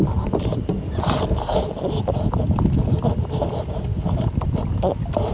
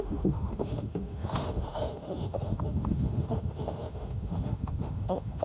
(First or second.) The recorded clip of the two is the first